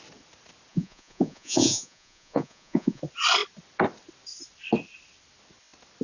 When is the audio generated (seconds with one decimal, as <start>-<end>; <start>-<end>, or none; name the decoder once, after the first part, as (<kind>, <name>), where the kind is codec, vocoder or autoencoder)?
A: 0.7-3.0 (vocoder, Vocos)